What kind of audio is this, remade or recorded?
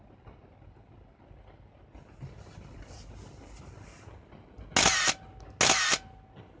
recorded